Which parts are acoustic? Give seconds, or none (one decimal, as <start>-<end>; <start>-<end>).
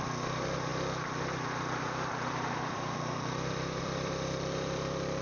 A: none